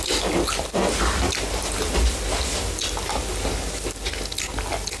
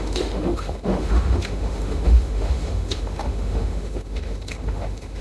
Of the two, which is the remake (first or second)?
second